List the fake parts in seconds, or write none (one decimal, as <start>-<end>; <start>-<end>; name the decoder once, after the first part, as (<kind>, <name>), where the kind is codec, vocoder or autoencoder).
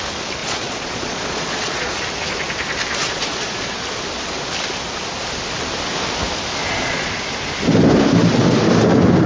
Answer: 0.4-1.9 (vocoder, Vocos); 3.0-3.8; 6.6-7.1